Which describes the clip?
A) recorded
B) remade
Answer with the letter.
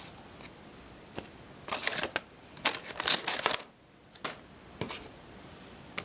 A